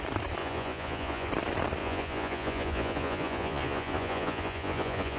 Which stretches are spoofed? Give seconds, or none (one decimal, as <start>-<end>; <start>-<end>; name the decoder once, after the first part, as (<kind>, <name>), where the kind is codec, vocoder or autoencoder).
0.4-1.3 (vocoder, Vocos); 1.8-5.2